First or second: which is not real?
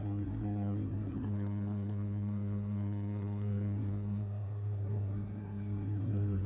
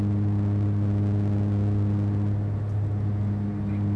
first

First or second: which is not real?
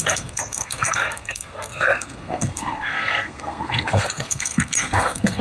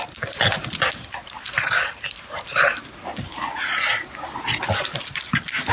first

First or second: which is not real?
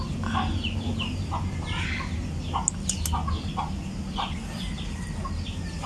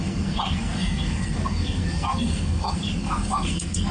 second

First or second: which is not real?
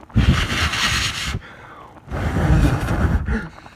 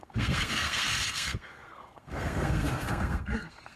second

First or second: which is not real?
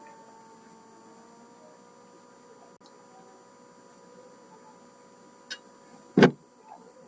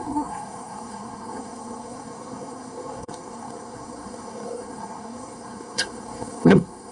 second